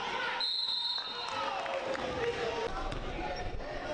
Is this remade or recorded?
recorded